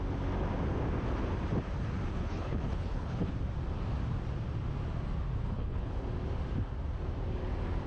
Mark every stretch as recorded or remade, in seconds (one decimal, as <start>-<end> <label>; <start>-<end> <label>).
0.0-2.1 recorded; 2.1-3.3 remade; 3.3-5.4 recorded; 5.4-5.9 remade; 5.9-7.9 recorded